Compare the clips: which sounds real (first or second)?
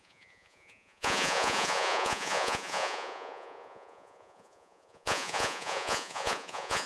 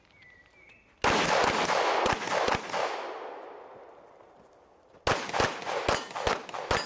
second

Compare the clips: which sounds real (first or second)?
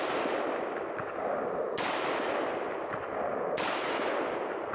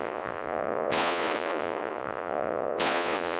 first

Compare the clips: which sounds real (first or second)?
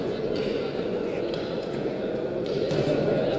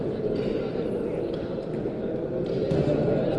second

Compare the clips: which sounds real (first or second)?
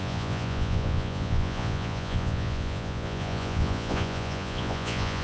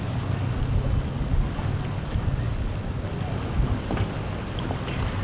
second